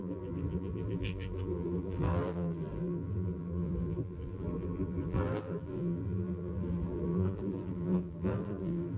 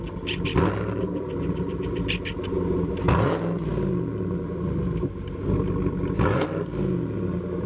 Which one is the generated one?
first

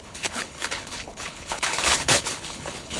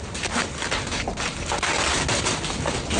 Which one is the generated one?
first